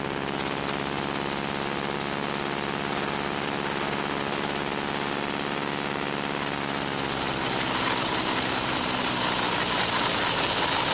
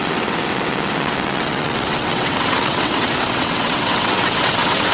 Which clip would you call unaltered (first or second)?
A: first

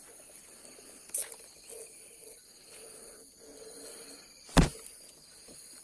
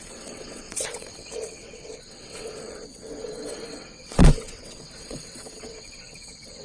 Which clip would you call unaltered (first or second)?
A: first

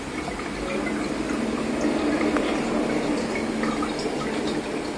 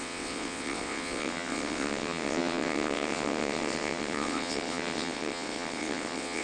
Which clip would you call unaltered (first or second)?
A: first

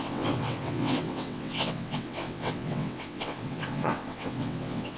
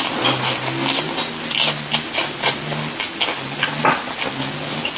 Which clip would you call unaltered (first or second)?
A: second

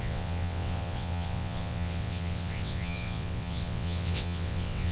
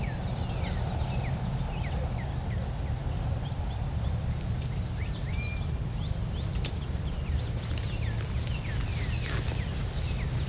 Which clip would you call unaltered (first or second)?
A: second